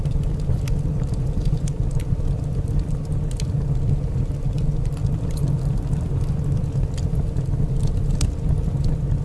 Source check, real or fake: real